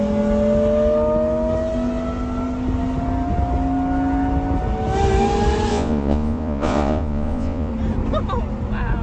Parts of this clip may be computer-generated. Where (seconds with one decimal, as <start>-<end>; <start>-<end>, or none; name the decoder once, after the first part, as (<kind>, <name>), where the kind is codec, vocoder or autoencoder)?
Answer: 5.7-7.7 (vocoder, Vocos)